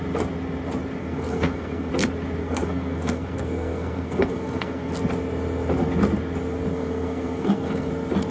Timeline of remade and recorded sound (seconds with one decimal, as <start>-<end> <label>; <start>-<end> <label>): 0.0-1.0 recorded; 1.0-1.9 remade; 1.9-2.4 recorded; 2.4-4.9 remade; 4.9-6.7 recorded; 6.7-7.9 remade; 7.9-8.3 recorded